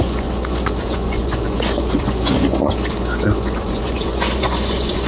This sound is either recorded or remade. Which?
remade